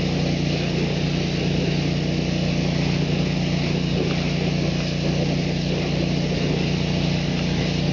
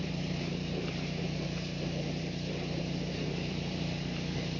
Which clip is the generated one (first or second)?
second